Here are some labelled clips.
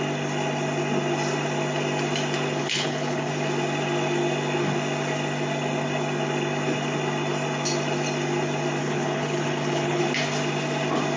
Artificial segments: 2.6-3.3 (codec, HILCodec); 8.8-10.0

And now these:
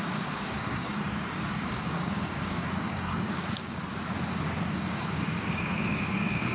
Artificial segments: 0.0-3.8 (codec, DAC); 4.6-6.5

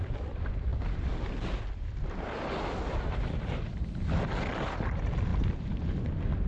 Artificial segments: none